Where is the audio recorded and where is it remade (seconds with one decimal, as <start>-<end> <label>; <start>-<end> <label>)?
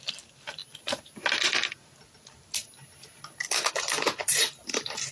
0.0-0.6 remade; 0.6-3.7 recorded; 3.7-5.1 remade